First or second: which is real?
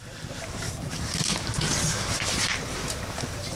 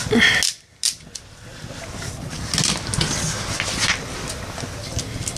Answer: second